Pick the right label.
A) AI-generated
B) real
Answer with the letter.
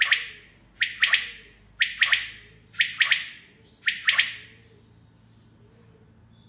B